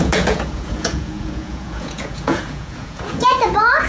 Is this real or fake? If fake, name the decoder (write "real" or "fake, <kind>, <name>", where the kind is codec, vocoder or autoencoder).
fake, vocoder, Vocos